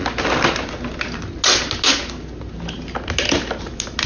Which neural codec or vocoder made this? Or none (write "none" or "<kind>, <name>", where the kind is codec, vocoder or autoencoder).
none